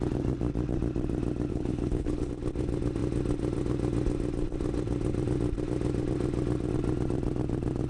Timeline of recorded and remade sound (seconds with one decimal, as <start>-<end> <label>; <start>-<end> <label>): 0.0-1.5 recorded; 1.5-2.3 remade; 2.3-7.9 recorded